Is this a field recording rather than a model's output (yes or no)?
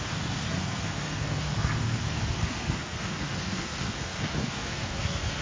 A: no